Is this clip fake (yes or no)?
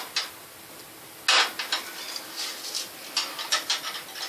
no